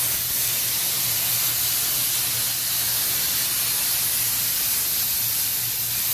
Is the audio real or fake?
real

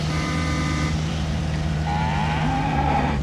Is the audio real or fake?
fake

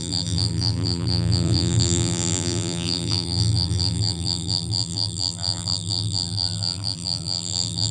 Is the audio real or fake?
fake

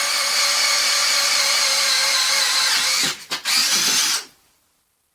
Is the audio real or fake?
fake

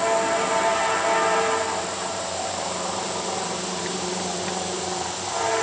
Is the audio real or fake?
fake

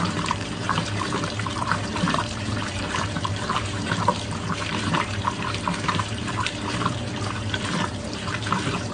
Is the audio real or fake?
fake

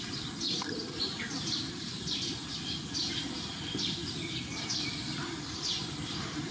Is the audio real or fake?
fake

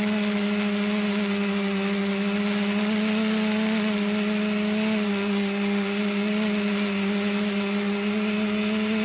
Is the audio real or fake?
real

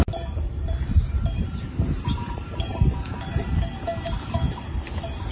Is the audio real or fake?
fake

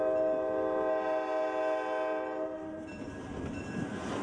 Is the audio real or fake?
real